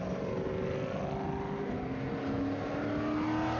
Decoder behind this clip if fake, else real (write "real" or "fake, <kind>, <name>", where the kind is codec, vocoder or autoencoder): real